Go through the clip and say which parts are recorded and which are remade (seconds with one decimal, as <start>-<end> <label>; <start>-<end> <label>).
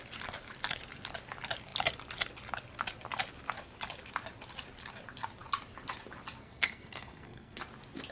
0.0-6.4 recorded; 6.4-7.6 remade; 7.6-8.1 recorded